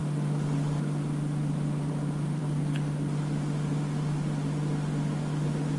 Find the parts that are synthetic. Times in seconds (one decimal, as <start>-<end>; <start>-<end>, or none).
none